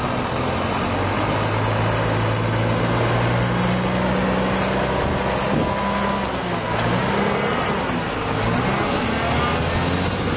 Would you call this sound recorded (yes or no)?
yes